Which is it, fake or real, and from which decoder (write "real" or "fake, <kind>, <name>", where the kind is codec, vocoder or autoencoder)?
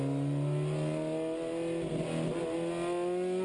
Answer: real